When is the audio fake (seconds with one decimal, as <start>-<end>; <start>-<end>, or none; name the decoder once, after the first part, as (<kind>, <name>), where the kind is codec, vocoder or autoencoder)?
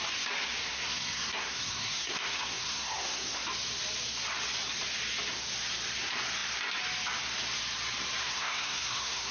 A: 0.6-3.4 (codec, SNAC); 8.2-9.3